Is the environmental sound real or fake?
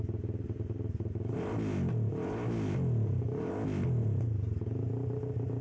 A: real